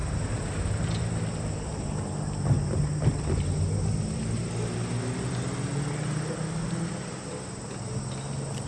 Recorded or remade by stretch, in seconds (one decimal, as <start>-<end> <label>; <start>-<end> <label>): 0.0-8.7 recorded